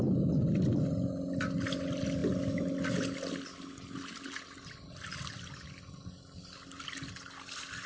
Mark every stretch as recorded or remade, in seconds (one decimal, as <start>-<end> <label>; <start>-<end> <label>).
0.0-7.9 recorded